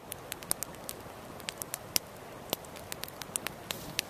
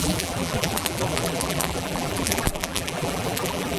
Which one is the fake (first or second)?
second